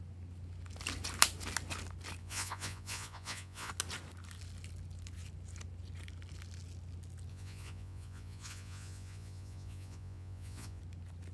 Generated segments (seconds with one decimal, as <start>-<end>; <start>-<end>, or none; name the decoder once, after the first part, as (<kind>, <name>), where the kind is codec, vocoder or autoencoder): 2.2-3.7 (vocoder, Vocos); 7.3-10.8

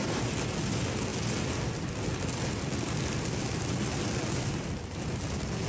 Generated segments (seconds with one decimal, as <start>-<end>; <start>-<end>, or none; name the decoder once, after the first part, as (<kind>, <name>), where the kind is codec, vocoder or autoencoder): none

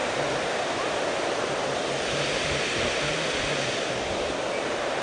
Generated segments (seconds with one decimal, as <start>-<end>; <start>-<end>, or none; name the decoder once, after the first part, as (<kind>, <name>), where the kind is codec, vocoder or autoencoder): none